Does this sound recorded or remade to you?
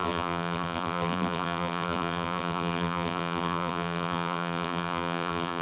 remade